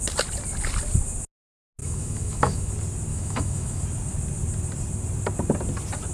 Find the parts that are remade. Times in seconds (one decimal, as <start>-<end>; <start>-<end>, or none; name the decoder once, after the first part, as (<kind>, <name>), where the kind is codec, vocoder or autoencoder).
1.8-2.7 (autoencoder, DAC-VAE); 3.1-3.8